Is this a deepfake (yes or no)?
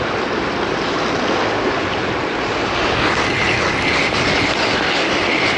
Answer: no